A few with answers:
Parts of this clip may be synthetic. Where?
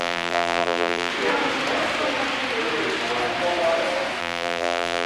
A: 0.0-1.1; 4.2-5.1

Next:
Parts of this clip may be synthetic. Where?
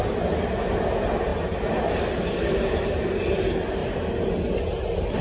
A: none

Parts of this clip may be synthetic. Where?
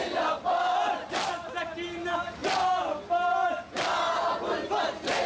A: none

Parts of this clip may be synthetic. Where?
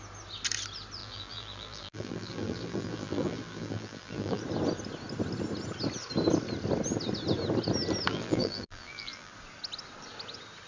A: 1.0-4.4; 8.1-9.3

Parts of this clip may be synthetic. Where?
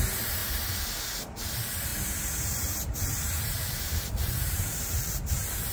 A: 1.9-5.3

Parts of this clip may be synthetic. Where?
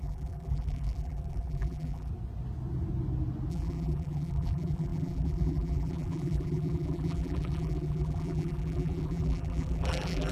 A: 0.0-2.1; 3.5-10.3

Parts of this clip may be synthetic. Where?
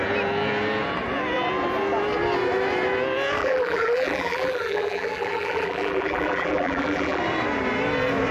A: 3.4-7.2